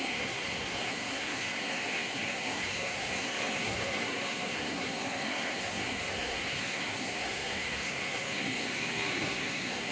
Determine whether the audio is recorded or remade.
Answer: remade